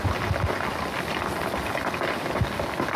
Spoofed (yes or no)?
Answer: no